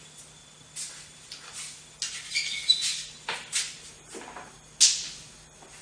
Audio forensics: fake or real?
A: real